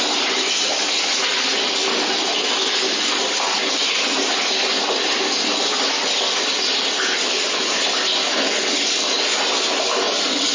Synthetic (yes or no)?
no